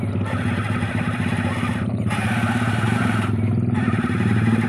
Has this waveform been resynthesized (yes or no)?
no